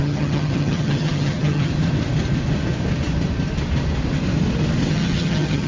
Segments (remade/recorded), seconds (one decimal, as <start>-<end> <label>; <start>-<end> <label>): 0.0-1.7 remade; 1.7-4.9 recorded; 4.9-5.7 remade